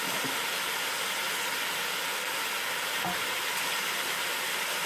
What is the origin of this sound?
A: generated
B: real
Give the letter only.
B